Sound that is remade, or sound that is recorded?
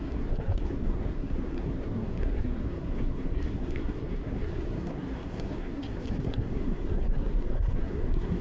remade